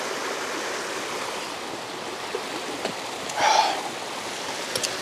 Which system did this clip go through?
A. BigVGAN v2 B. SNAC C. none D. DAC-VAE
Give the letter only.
C